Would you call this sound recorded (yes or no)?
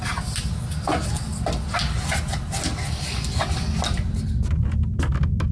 yes